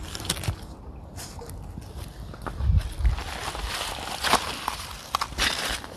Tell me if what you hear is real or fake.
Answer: real